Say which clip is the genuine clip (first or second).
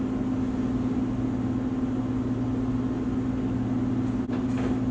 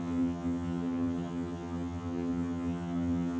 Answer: first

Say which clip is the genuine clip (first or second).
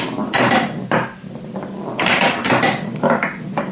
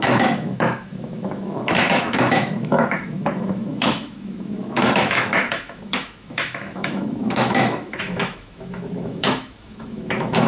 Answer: first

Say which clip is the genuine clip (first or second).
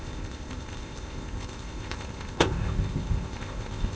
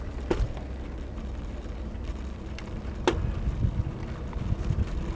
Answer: second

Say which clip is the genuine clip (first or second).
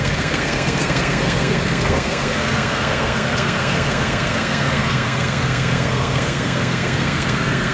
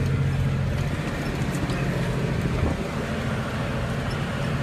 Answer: second